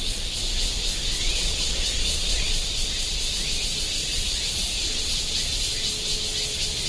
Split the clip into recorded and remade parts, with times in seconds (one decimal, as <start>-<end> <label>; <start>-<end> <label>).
0.0-1.2 recorded; 1.2-2.5 remade; 2.5-4.0 recorded; 4.0-5.7 remade; 5.7-6.9 recorded